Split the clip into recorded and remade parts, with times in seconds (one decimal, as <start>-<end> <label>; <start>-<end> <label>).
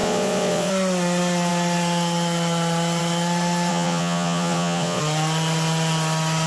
0.0-0.7 remade; 0.7-3.7 recorded; 3.7-5.0 remade; 5.0-6.5 recorded